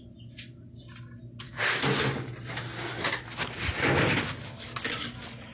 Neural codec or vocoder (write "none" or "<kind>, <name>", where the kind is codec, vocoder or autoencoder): none